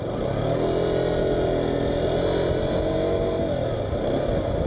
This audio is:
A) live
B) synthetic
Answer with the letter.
A